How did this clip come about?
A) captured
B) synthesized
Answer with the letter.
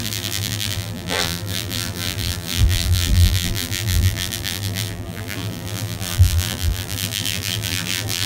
B